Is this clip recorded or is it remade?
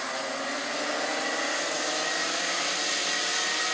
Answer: recorded